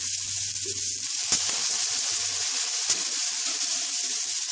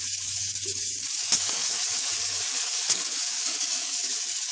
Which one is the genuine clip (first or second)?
first